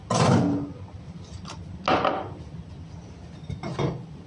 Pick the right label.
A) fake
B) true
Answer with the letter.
B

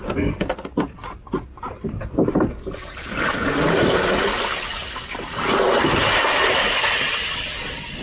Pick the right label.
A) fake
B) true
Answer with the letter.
B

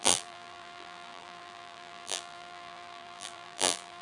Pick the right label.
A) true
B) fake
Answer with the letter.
B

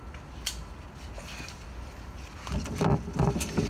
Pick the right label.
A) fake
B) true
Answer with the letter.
B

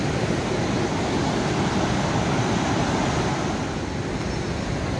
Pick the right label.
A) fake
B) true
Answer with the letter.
B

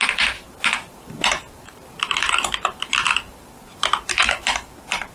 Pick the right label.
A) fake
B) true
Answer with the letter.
A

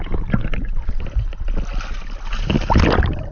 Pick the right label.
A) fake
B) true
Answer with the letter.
B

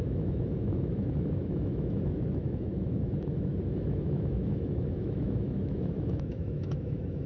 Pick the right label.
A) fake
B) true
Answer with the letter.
A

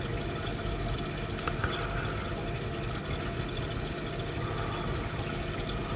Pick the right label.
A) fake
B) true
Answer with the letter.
B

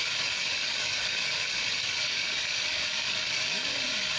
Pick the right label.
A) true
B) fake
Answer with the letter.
B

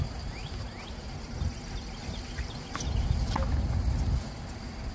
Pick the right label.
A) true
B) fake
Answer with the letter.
A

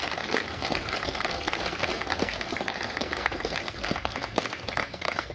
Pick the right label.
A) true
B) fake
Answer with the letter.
B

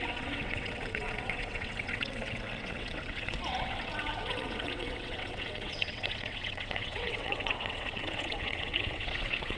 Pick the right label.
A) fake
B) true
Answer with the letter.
A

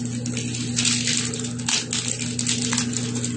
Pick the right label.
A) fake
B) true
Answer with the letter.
B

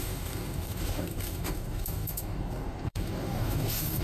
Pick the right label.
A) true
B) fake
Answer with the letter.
B